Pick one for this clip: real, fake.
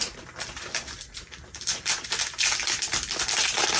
real